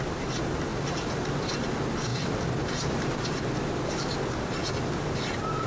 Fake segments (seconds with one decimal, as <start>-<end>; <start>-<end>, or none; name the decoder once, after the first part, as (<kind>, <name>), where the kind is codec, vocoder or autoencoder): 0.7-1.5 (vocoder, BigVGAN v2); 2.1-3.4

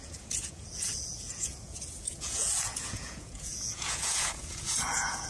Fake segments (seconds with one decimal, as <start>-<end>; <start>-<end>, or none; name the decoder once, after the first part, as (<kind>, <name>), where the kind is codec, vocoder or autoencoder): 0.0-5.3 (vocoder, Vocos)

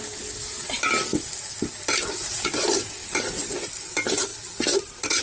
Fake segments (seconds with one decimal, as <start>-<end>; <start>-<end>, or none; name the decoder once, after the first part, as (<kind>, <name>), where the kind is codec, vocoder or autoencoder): none

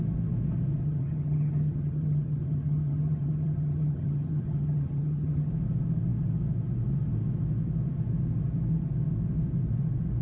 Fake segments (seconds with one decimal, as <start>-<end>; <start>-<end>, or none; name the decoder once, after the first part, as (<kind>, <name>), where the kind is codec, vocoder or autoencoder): 0.8-5.5 (vocoder, HiFi-GAN)

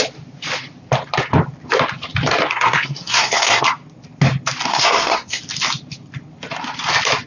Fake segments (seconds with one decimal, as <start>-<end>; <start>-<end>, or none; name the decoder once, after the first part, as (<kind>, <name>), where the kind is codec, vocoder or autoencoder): 2.5-3.6 (codec, SNAC); 4.7-5.4

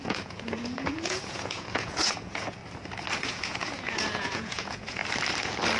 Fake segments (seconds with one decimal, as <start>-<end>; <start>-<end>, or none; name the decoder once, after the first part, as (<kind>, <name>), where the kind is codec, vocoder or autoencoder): 0.0-2.6 (vocoder, Vocos); 3.2-5.0